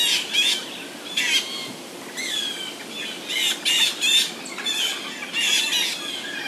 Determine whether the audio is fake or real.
real